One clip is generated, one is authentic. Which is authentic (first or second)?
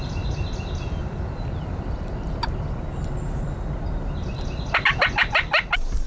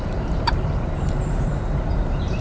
first